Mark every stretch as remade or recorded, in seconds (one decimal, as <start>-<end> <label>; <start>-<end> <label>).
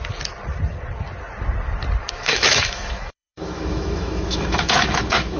0.0-2.0 recorded; 2.0-5.4 remade